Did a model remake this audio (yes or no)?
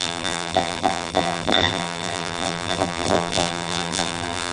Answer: yes